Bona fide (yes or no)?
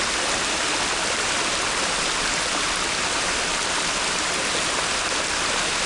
yes